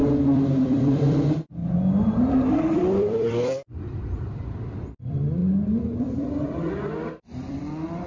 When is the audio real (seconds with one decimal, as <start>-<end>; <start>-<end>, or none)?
1.6-2.3